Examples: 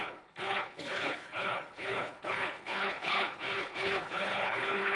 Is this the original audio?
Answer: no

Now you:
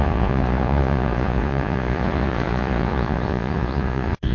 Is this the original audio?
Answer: no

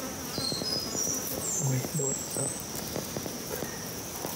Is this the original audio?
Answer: yes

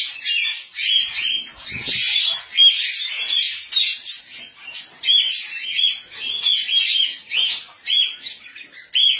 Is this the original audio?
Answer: yes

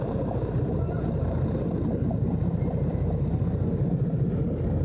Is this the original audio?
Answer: no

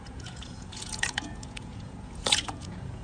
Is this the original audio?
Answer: no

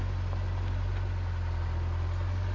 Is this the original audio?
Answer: yes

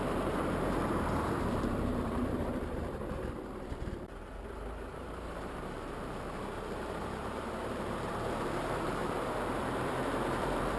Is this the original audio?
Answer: no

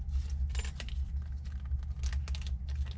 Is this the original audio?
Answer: yes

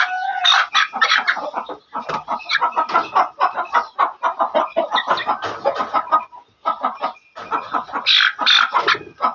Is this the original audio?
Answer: yes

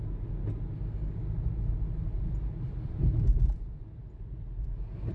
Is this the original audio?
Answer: yes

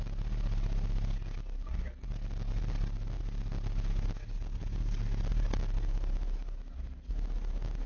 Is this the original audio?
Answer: yes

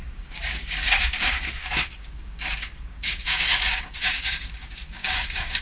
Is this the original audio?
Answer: no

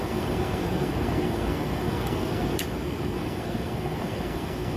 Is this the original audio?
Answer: no